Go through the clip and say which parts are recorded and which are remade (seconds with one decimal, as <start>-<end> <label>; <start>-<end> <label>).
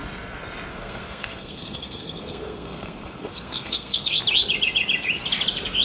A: 0.0-0.7 recorded; 0.7-4.2 remade; 4.2-5.8 recorded